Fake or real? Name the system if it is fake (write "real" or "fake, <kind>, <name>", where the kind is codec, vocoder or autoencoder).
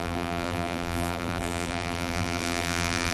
fake, vocoder, BigVGAN v2